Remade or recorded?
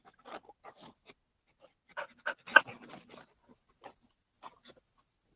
recorded